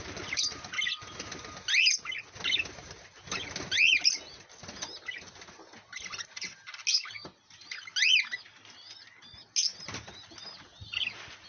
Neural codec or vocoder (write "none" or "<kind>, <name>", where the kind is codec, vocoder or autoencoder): none